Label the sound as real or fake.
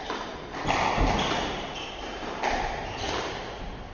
real